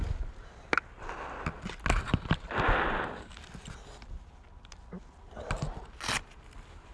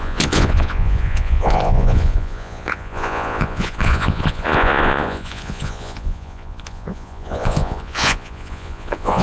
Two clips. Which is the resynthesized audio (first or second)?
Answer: second